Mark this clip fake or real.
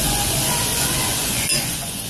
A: fake